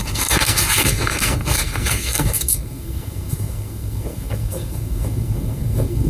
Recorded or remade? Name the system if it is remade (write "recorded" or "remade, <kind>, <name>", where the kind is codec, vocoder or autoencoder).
remade, codec, SNAC